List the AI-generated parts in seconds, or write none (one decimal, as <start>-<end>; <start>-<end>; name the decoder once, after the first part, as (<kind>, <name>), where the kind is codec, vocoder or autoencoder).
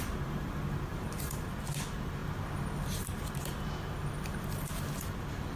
0.9-1.4 (vocoder, BigVGAN v2)